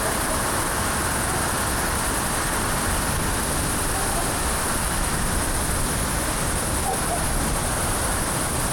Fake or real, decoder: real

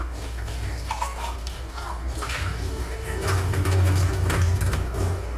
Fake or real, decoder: fake, codec, DAC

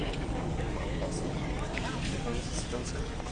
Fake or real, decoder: fake, codec, DAC